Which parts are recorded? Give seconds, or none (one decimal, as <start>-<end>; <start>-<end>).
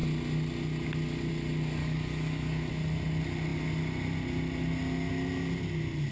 0.0-1.8; 2.7-6.1